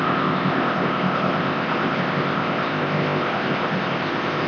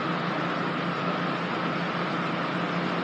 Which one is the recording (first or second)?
second